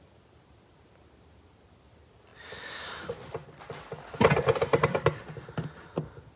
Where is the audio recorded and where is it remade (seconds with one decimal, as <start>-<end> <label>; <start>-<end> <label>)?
0.0-6.4 recorded